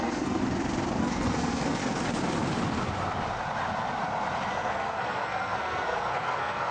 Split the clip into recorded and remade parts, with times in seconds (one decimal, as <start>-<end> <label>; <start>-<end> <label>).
0.0-0.4 remade; 0.4-1.0 recorded; 1.0-1.8 remade; 1.8-4.5 recorded; 4.5-6.7 remade